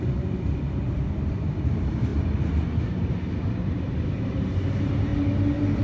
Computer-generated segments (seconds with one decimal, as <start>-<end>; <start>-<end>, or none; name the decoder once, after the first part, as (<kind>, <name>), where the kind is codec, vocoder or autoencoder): 0.0-5.1 (vocoder, BigVGAN v2)